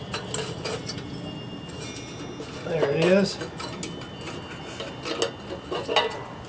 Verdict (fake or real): real